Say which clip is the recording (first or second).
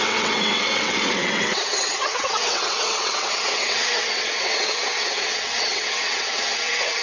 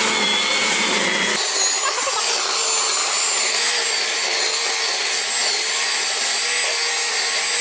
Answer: second